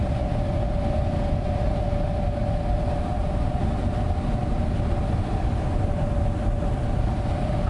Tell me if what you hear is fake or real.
real